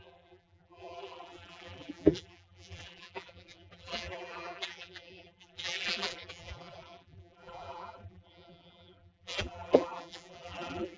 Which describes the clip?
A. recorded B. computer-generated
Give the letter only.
B